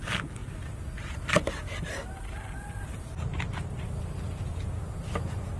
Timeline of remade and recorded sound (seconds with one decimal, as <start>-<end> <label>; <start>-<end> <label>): 0.0-5.6 recorded